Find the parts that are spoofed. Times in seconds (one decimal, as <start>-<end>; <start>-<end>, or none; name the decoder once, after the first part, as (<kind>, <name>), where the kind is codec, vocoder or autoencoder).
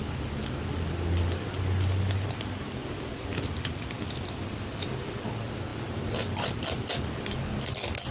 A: none